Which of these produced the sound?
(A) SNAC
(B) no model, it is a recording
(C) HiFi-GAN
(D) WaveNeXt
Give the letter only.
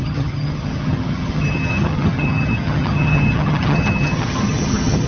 C